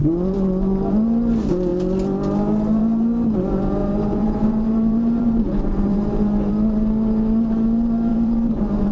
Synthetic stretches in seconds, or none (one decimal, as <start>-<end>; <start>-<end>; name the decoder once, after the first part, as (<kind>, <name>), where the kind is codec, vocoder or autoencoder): 3.8-6.5 (vocoder, BigVGAN v2); 8.1-8.9